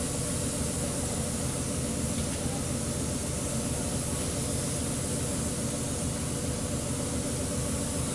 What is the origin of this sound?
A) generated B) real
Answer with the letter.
B